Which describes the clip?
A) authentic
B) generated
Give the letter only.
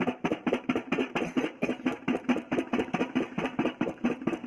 B